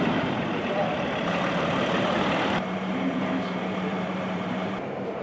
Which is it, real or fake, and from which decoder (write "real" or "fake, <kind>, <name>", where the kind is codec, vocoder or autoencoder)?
fake, vocoder, BigVGAN v2